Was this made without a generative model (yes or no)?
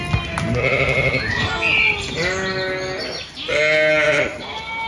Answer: yes